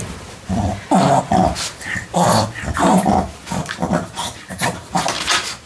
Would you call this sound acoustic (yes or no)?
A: yes